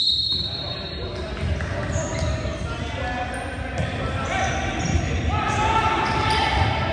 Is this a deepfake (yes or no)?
no